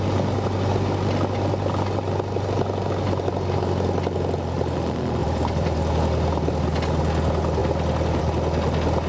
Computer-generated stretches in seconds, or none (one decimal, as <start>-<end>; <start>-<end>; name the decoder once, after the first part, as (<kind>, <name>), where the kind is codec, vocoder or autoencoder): 5.2-5.9 (vocoder, BigVGAN v2)